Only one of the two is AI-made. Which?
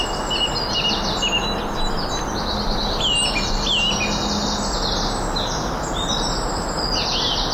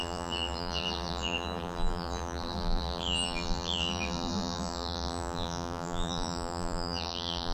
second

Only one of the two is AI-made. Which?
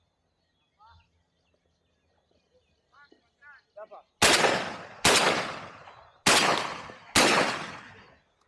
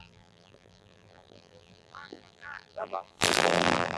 second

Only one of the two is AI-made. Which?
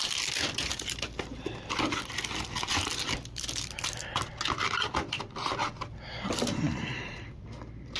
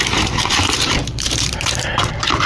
second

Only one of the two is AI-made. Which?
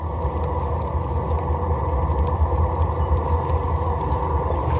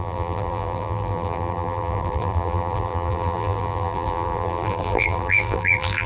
second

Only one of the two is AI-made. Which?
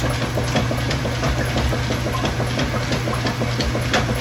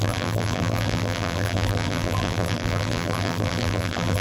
second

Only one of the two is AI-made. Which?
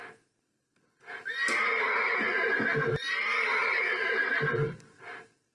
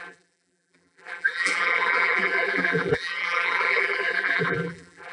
second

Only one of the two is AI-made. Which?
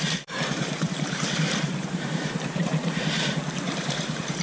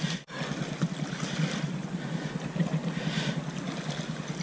first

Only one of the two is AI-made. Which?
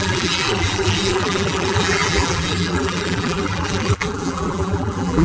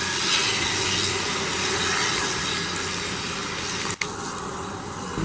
first